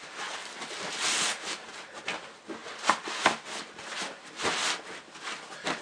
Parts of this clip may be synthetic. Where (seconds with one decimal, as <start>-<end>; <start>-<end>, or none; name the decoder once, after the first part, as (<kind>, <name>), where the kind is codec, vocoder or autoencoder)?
none